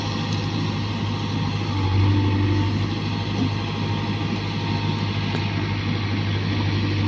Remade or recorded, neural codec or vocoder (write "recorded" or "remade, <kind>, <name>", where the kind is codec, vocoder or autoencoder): recorded